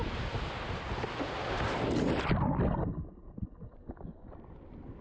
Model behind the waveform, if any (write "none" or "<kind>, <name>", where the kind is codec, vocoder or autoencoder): none